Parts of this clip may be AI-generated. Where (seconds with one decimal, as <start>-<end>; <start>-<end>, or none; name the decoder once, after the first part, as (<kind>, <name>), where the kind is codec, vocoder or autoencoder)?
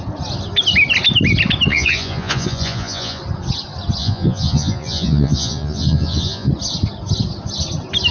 1.7-3.2 (vocoder, Vocos); 4.0-6.5